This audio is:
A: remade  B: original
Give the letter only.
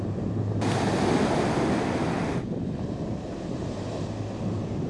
B